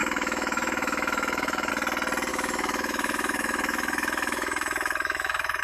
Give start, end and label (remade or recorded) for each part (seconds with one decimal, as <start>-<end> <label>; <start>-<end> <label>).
0.0-1.7 remade; 1.7-2.3 recorded; 2.3-5.6 remade